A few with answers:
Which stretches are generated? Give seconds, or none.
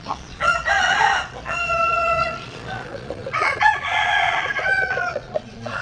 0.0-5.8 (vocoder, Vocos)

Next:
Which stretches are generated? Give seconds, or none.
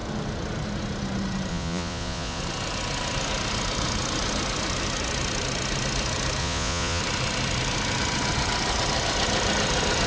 1.5-2.4 (vocoder, Vocos); 6.4-7.0